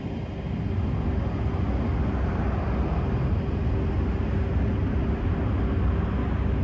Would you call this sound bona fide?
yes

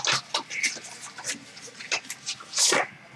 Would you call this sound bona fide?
yes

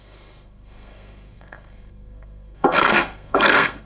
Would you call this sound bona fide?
no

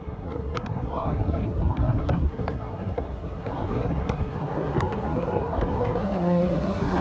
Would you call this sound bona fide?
no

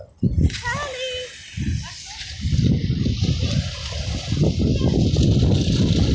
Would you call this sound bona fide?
yes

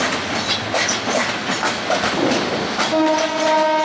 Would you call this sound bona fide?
yes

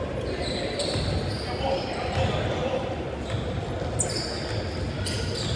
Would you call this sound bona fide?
yes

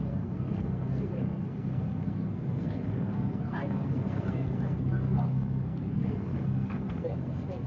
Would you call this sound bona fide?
no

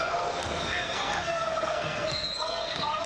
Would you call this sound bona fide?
no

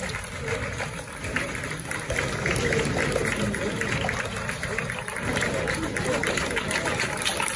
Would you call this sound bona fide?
yes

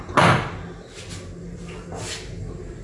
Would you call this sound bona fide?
yes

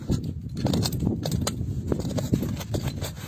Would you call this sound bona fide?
yes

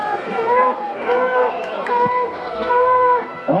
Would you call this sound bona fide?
no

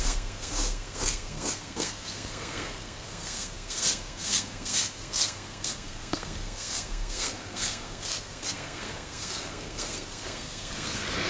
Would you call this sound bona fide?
no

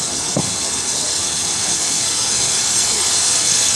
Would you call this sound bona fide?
no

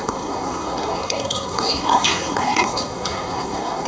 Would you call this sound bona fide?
no